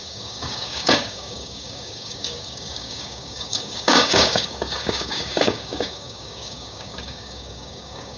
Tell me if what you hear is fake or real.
fake